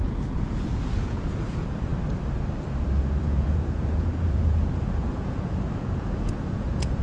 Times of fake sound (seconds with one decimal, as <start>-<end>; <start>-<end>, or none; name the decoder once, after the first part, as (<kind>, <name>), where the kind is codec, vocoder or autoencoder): 0.0-1.9 (vocoder, Vocos); 3.2-7.0